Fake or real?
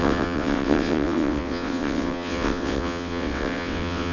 fake